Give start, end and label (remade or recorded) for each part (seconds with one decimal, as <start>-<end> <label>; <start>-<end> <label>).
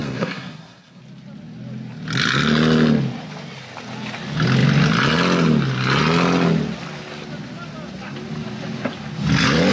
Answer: 0.0-1.0 remade; 1.0-9.7 recorded